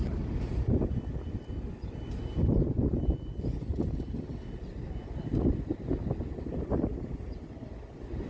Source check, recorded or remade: recorded